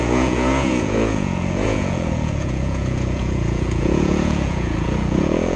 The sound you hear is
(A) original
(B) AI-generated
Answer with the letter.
B